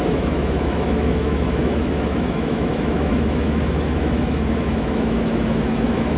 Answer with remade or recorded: remade